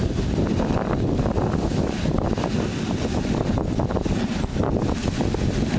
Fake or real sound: real